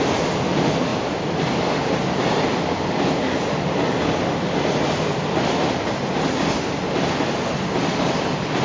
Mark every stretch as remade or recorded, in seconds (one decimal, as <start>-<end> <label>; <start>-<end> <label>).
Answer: 0.0-0.9 recorded; 0.9-3.8 remade; 3.8-8.6 recorded